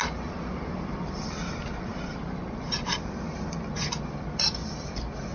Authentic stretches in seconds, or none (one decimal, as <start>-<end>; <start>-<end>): none